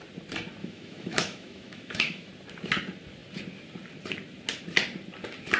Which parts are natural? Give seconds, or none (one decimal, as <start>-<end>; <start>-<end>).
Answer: 0.0-0.6; 2.3-5.6